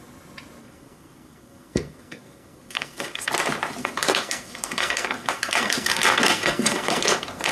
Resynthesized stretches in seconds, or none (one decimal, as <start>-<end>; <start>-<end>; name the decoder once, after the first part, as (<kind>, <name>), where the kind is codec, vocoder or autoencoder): 0.6-3.3 (codec, SNAC); 3.8-7.5